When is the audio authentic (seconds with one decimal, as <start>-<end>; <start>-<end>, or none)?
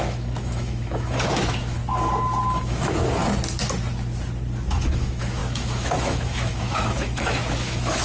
1.8-2.6; 3.2-4.7